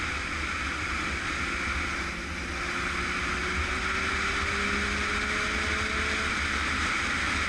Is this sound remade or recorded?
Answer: recorded